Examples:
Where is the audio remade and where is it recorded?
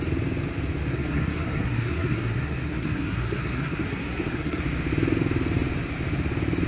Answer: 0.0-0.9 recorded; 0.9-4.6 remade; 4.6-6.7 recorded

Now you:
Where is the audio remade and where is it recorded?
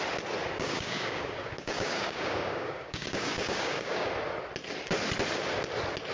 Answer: 0.0-0.4 recorded; 0.4-4.1 remade; 4.1-6.1 recorded